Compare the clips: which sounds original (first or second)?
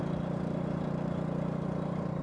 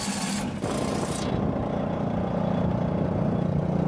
second